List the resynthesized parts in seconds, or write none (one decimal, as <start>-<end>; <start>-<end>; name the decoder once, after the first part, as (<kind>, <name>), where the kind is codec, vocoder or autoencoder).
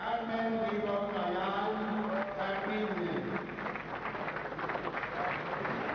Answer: none